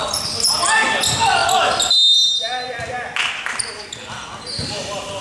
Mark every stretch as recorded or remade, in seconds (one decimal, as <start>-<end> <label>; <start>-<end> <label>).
0.0-5.2 recorded